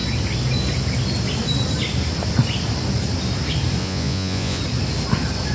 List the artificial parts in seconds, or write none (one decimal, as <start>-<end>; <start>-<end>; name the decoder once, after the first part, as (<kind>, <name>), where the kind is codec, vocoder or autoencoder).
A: 3.8-4.6 (vocoder, Vocos)